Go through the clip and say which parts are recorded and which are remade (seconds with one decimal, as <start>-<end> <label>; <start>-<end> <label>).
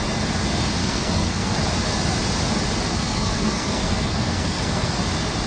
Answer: 0.0-0.8 recorded; 0.8-1.6 remade; 1.6-2.9 recorded; 2.9-5.0 remade; 5.0-5.5 recorded